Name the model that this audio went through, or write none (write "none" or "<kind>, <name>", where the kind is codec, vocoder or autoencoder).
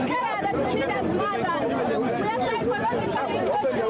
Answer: vocoder, BigVGAN v2